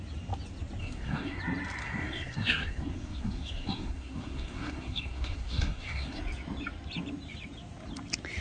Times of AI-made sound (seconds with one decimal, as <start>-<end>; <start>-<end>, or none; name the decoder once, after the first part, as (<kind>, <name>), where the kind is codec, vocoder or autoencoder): 0.8-1.4 (codec, SNAC); 1.8-6.2

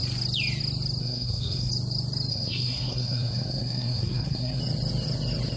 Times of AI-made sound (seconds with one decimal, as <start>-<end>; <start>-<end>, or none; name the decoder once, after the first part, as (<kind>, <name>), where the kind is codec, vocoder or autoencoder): 1.0-1.7 (codec, SNAC); 2.3-4.6

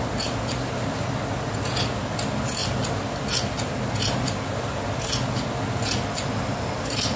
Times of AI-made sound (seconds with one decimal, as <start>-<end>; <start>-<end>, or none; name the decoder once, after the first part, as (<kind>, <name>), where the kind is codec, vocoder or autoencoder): none

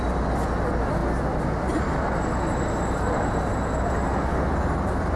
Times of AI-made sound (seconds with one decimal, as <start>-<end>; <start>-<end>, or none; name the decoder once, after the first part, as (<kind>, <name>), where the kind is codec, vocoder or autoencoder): none